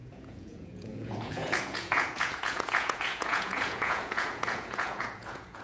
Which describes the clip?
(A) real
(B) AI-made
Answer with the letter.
B